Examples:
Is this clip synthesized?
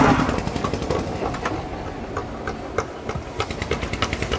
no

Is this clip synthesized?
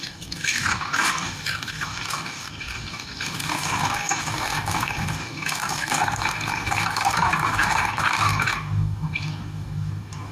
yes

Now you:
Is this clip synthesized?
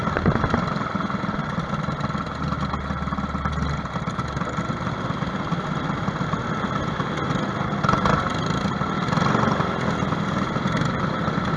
no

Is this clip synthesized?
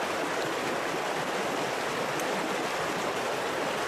no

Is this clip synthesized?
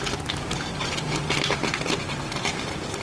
no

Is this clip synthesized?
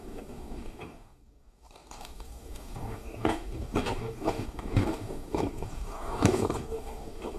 yes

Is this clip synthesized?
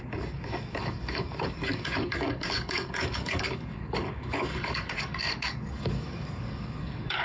yes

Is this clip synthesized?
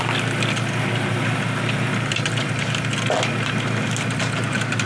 no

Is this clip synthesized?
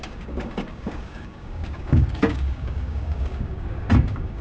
yes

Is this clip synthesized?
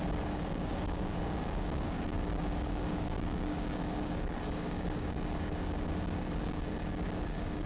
yes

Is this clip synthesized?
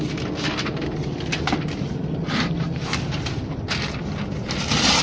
no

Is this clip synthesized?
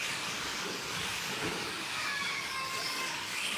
yes